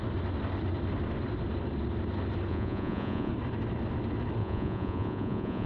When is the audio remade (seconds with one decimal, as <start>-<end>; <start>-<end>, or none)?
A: 2.5-3.3; 4.4-5.7